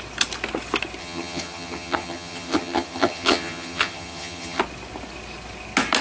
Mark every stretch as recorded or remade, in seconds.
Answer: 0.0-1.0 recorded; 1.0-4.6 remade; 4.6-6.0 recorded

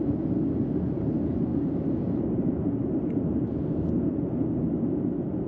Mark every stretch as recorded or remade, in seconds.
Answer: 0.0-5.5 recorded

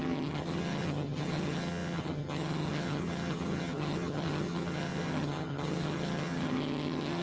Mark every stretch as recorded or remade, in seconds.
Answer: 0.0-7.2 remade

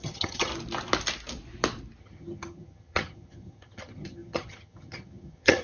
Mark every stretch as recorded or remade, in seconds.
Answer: 0.0-0.5 remade; 0.5-2.0 recorded; 2.0-5.6 remade

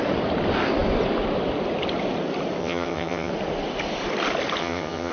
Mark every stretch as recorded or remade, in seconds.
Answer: 0.0-2.6 recorded; 2.6-3.3 remade; 3.3-4.6 recorded; 4.6-5.1 remade